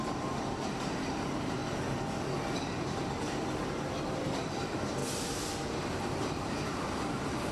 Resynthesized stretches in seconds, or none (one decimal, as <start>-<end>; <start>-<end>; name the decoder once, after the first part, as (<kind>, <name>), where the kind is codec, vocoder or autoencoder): 0.0-1.6 (vocoder, BigVGAN v2); 4.0-5.0; 6.0-7.5